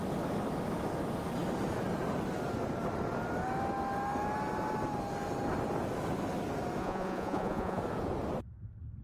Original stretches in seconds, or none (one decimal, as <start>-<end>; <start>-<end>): 0.0-6.8; 7.8-9.0